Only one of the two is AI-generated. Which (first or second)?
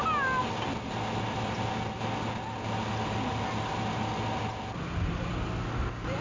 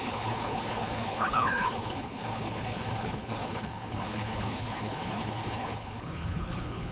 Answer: second